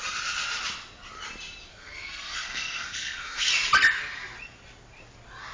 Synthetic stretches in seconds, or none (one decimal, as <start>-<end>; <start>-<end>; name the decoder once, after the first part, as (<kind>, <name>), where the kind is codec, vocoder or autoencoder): 1.7-3.5 (codec, SNAC)